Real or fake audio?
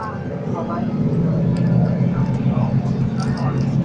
real